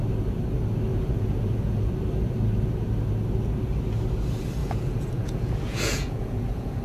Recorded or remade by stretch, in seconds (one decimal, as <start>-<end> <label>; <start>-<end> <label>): 0.0-0.9 recorded; 0.9-1.9 remade; 1.9-4.6 recorded; 4.6-6.8 remade